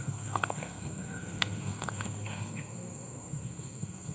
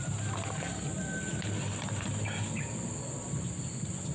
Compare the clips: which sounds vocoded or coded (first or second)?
first